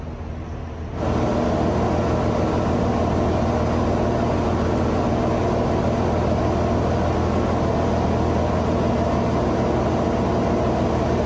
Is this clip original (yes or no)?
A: yes